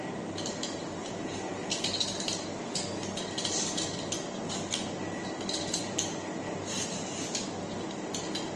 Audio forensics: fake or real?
real